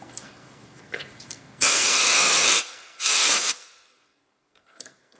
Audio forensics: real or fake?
fake